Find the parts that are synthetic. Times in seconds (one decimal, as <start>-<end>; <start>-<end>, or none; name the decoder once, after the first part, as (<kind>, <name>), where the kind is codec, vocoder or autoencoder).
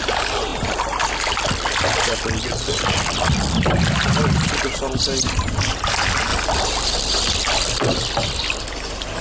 none